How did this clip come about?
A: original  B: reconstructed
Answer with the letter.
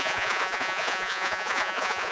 B